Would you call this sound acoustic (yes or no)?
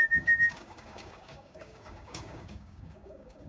no